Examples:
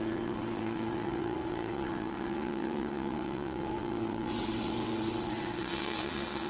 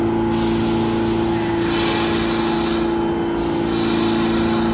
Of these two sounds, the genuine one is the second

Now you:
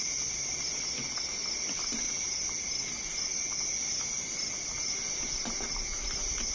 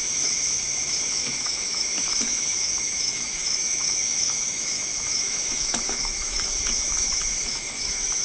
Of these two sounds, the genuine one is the first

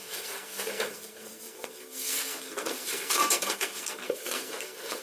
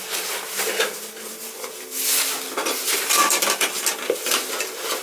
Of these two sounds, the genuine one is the second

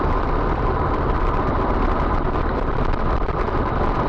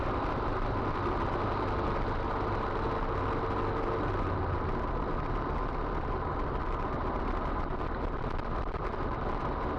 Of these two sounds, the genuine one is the second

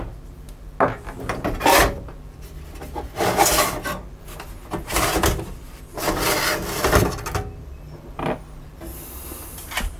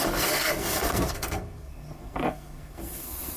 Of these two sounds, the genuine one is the first